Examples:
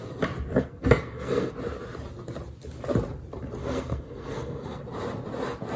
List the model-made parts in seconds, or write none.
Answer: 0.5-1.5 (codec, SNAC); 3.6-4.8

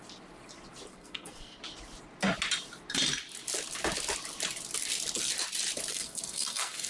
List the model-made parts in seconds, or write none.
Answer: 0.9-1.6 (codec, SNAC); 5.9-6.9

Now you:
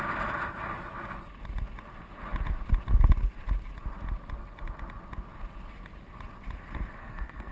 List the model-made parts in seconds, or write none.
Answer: 7.0-7.5 (codec, SNAC)

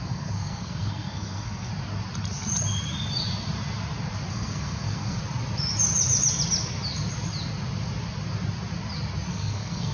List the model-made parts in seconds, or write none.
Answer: 0.0-1.7 (codec, SNAC); 4.3-5.2; 9.3-9.9

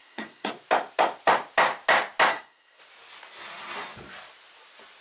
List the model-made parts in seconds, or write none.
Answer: 0.0-0.5 (codec, SNAC); 2.3-2.8